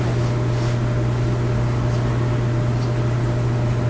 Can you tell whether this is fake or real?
real